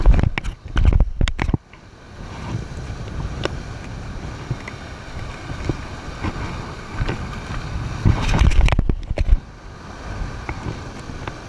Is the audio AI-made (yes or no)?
no